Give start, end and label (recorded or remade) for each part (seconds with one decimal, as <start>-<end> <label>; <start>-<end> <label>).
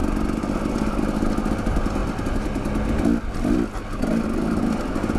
0.0-5.2 recorded